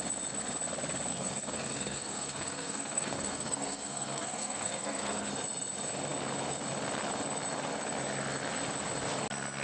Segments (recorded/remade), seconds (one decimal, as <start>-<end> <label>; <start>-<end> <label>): 0.0-1.1 recorded; 1.1-5.3 remade; 5.3-9.6 recorded